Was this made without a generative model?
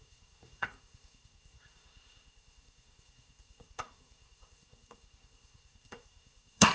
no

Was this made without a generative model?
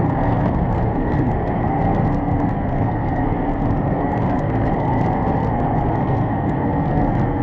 no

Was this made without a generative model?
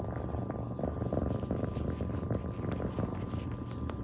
yes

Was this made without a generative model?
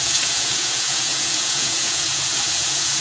no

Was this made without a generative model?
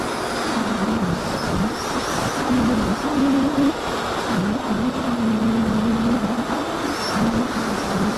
yes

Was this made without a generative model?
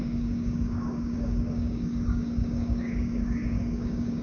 no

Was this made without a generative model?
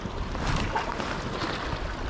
yes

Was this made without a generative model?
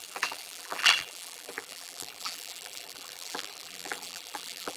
no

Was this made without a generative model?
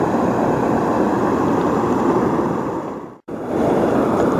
no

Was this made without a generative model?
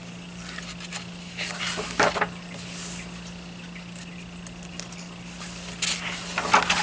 yes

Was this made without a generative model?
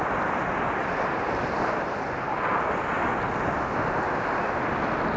yes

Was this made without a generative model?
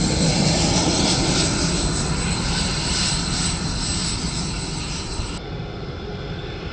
yes